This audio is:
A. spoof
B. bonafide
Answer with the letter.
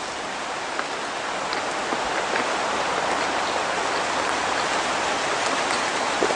B